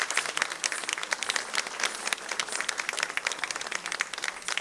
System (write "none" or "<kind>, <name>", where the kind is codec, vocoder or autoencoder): none